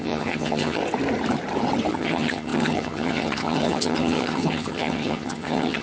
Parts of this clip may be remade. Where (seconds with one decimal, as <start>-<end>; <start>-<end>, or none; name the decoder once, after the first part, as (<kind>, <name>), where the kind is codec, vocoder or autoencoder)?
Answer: 0.0-0.8 (vocoder, HiFi-GAN); 1.9-5.8